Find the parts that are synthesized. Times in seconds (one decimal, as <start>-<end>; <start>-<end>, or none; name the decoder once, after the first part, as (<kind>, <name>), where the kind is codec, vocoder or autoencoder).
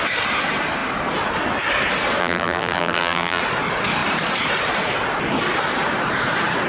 2.2-3.4 (vocoder, BigVGAN v2)